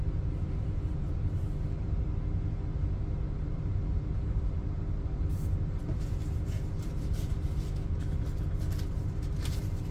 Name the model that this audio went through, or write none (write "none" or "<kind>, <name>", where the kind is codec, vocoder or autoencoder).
vocoder, BigVGAN v2